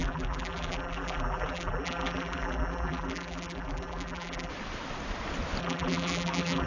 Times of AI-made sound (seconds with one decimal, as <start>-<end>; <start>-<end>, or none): 0.0-4.5; 5.6-6.7